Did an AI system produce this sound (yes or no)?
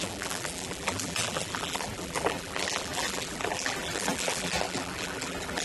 yes